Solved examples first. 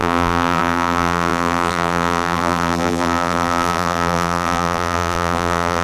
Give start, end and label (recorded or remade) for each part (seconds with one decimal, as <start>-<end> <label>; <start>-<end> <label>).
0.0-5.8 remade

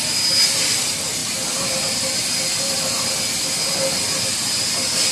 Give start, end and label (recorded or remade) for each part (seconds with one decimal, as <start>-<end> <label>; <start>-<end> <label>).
0.0-5.1 recorded

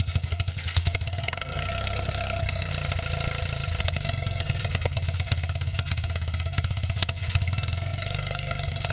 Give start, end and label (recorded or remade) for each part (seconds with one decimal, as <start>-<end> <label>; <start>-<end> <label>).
0.0-2.7 remade; 2.7-3.8 recorded; 3.8-8.9 remade